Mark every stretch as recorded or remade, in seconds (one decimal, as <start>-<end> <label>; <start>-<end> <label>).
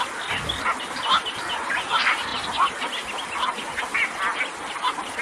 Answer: 0.0-5.2 recorded